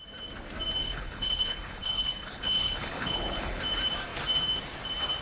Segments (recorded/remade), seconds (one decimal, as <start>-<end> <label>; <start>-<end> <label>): 0.0-0.8 recorded; 0.8-3.6 remade; 3.6-5.2 recorded